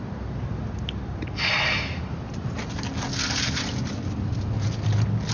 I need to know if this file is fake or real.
real